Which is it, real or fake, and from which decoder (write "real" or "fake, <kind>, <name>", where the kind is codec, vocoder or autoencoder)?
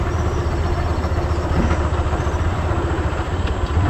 real